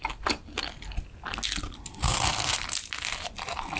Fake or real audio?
real